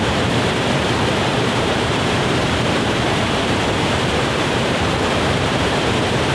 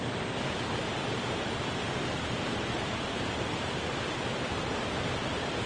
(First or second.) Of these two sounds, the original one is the second